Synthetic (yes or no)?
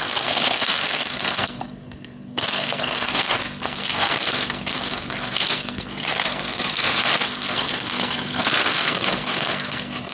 yes